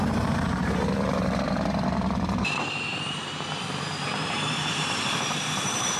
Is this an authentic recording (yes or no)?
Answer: no